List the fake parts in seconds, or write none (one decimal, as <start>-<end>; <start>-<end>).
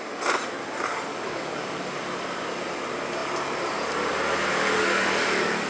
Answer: 1.1-2.0; 4.5-5.7